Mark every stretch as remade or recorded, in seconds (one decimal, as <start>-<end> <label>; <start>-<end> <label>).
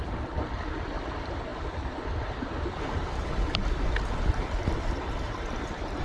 0.0-6.0 recorded